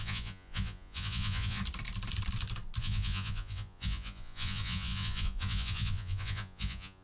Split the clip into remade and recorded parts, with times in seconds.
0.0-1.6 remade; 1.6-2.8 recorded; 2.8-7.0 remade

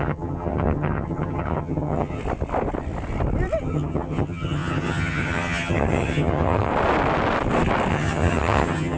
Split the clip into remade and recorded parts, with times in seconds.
0.0-2.2 remade; 2.2-3.6 recorded; 3.6-6.7 remade; 6.7-7.9 recorded; 7.9-9.0 remade